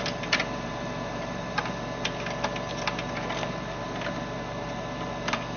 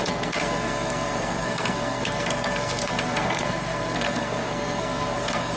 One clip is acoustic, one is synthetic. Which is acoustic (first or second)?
first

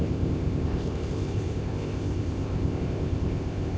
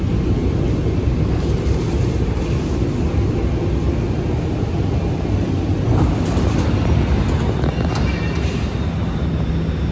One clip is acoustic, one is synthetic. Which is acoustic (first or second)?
second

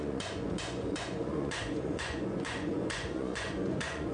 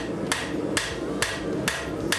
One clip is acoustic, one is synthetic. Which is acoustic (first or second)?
second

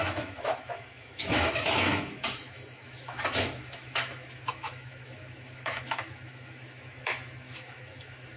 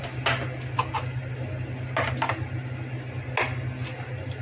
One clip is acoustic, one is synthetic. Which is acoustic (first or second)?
second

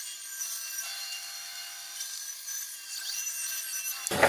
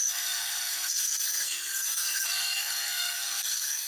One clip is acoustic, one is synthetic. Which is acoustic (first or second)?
first